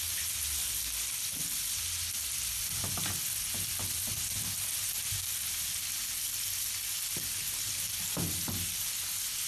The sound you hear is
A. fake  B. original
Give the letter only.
B